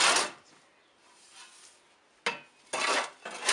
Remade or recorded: recorded